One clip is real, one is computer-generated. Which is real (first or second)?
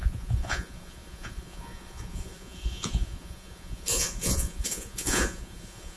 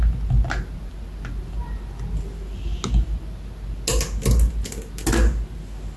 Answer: second